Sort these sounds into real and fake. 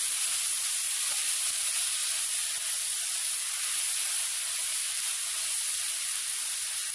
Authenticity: real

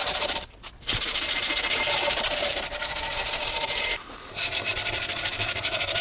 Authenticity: fake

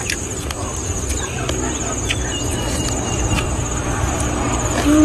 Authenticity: fake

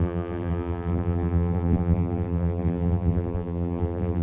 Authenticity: fake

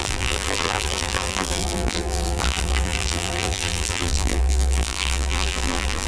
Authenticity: fake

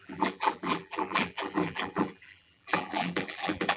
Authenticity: fake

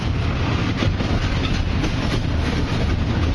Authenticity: real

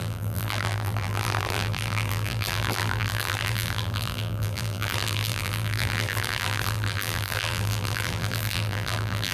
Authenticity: fake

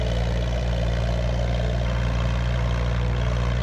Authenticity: real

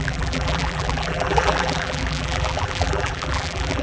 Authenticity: fake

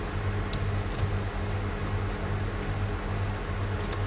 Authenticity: fake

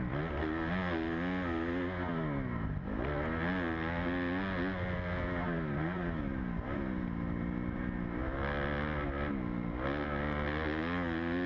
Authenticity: real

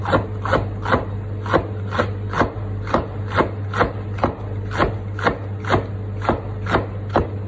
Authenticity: real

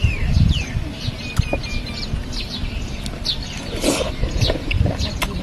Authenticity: real